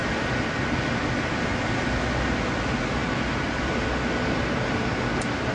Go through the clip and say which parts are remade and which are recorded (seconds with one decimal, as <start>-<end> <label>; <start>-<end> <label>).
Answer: 0.0-2.0 remade; 2.0-5.5 recorded